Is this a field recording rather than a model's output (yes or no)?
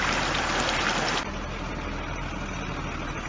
yes